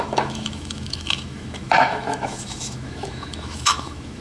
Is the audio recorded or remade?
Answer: remade